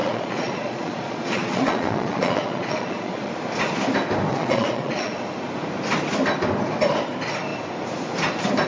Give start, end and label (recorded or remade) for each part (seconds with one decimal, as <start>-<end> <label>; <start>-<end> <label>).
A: 0.0-3.3 remade; 3.3-4.3 recorded; 4.3-5.1 remade; 5.1-8.7 recorded